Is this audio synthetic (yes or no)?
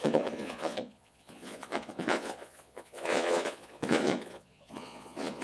yes